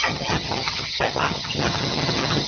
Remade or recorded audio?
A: remade